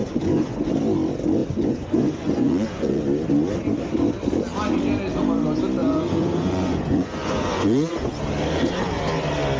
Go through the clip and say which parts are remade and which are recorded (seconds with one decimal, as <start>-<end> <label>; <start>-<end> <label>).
0.0-0.7 remade; 0.7-1.4 recorded; 1.4-3.0 remade; 3.0-5.8 recorded; 5.8-8.1 remade; 8.1-9.6 recorded